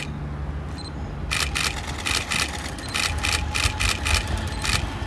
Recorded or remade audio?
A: recorded